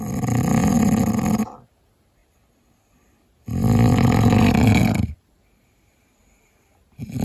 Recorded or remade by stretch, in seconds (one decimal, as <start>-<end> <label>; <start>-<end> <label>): 0.0-7.2 recorded